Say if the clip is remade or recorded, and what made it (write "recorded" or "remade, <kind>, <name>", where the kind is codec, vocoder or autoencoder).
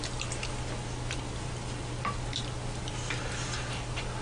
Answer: recorded